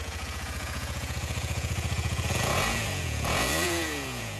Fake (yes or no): yes